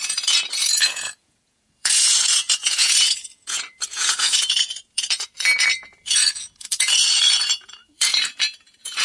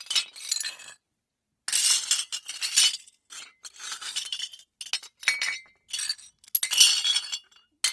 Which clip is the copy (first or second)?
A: first